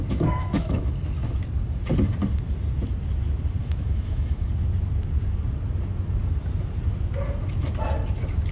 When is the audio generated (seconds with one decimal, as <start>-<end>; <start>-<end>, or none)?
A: 0.4-0.9; 3.6-4.5